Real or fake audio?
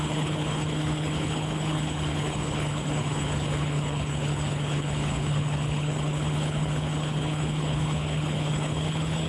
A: fake